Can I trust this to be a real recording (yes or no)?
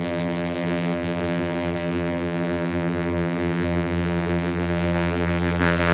no